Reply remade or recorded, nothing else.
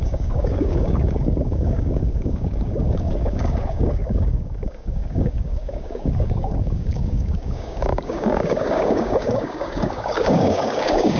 remade